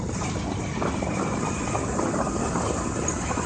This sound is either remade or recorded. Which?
recorded